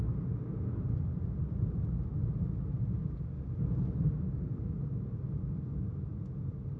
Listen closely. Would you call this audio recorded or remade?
recorded